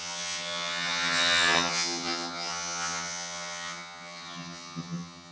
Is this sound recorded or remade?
remade